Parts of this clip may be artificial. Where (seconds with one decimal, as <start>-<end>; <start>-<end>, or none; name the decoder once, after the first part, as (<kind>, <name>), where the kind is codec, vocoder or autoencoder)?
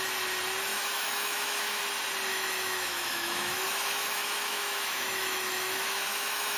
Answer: 0.7-1.8 (autoencoder, DAC-VAE); 2.3-6.6